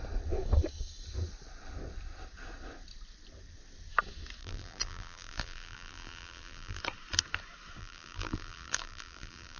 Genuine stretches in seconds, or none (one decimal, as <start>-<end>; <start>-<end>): 0.0-4.4; 6.8-7.8